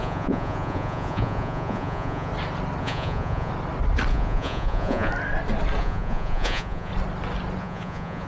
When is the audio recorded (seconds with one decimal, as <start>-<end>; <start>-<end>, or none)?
2.3-2.8; 3.5-4.1; 5.1-5.8; 6.9-7.6